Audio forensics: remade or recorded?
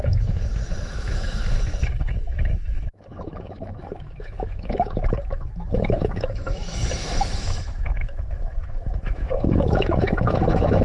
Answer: remade